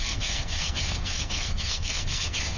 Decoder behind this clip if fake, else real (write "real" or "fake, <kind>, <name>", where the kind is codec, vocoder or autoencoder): fake, codec, SNAC